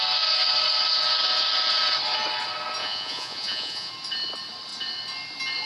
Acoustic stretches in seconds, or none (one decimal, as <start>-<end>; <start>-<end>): 0.0-2.8; 3.9-5.7